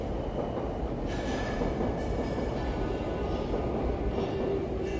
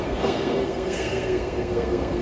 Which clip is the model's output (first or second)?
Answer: second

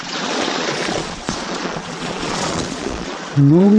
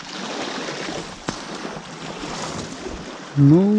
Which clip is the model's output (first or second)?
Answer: first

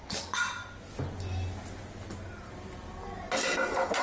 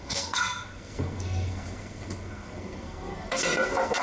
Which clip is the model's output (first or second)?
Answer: second